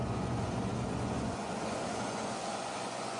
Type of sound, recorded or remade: remade